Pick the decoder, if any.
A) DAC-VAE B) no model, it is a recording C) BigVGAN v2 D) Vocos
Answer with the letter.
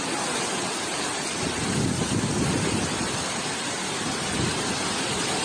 B